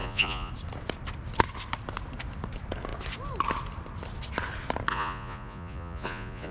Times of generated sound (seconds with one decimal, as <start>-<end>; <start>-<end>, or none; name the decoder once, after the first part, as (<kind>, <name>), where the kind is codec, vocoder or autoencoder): 0.0-0.5 (vocoder, Vocos); 4.9-6.5